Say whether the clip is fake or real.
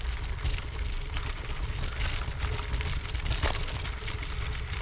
fake